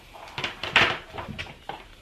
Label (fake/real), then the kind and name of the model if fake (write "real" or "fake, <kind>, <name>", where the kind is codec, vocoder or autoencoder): fake, vocoder, BigVGAN v2